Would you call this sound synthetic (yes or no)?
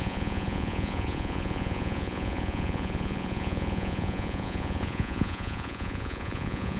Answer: yes